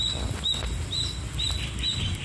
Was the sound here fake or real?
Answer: real